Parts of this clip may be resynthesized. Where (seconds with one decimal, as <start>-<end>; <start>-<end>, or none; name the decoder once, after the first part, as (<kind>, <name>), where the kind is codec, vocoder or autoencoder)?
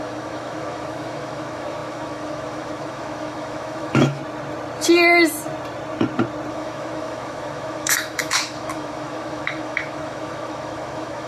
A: 0.0-4.2 (autoencoder, DAC-VAE); 6.5-11.3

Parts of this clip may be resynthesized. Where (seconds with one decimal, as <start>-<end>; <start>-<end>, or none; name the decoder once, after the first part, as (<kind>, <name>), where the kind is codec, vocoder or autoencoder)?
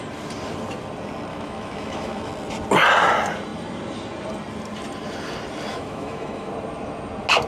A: 1.3-2.3 (autoencoder, DAC-VAE); 5.7-6.5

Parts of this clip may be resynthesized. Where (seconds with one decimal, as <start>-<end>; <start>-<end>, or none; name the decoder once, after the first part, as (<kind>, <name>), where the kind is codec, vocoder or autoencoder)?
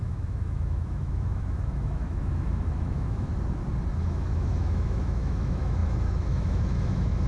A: 0.0-3.3 (autoencoder, DAC-VAE); 4.0-7.3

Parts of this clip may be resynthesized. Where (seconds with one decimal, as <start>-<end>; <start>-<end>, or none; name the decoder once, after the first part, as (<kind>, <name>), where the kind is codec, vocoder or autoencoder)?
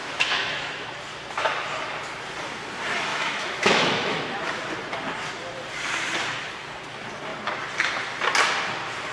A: 0.0-1.0 (autoencoder, DAC-VAE); 3.1-4.6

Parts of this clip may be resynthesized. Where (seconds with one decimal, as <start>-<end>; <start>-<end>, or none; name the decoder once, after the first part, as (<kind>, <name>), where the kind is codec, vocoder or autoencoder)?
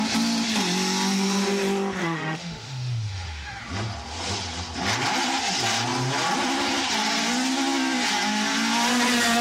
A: 2.0-3.6 (autoencoder, DAC-VAE)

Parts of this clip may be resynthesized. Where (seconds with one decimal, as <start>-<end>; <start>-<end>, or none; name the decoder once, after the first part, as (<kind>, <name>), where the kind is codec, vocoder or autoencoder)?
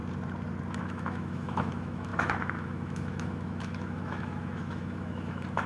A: 0.8-5.7 (autoencoder, DAC-VAE)